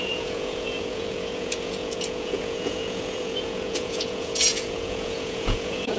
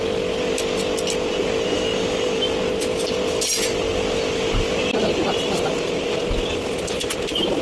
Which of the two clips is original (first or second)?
second